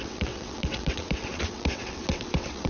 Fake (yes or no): yes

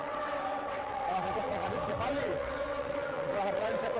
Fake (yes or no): yes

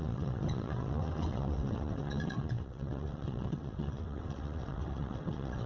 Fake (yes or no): yes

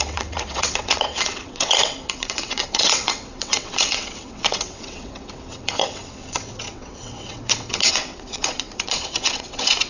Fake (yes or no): yes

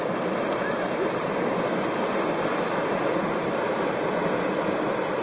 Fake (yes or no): no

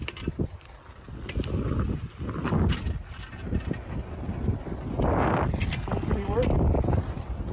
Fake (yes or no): no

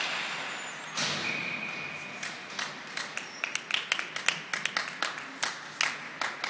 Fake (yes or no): no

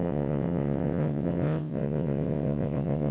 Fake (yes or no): yes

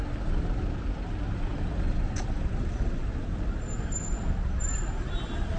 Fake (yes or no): no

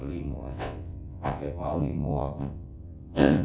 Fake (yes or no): yes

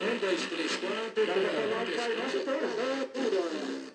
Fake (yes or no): no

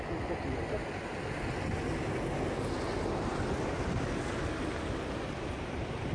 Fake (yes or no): no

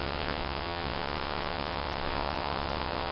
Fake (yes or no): yes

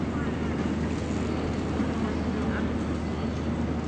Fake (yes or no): no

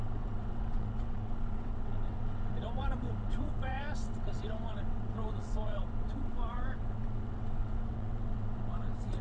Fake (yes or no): yes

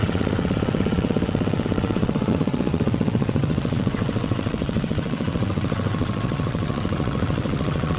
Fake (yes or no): yes